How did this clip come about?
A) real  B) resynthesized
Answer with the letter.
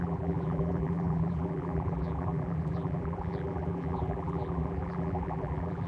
B